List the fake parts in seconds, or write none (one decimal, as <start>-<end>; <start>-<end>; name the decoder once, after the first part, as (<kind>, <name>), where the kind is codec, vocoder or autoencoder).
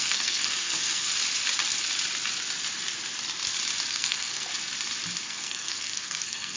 0.0-1.1 (codec, SNAC); 3.9-4.5; 5.2-6.6